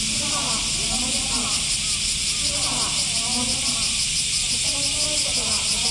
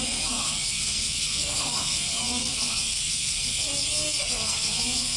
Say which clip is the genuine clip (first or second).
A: first